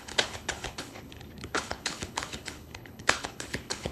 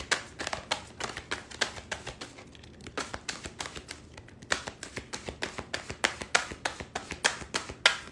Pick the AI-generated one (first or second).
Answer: first